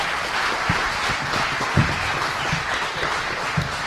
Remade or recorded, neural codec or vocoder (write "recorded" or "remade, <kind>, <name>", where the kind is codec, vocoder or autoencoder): recorded